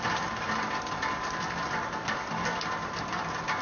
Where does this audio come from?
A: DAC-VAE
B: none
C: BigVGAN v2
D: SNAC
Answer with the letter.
C